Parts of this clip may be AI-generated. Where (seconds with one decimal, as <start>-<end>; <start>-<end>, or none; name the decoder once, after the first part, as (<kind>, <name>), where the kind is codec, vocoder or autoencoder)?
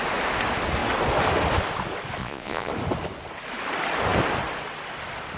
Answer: 2.2-2.7 (vocoder, Vocos)